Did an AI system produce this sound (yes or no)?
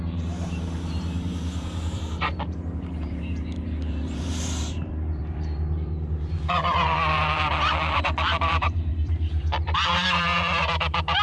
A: yes